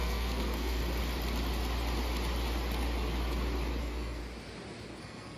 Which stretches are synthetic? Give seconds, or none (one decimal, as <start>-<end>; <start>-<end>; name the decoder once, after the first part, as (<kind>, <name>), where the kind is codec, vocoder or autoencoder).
0.0-0.8 (codec, SNAC); 3.8-4.2; 5.0-5.4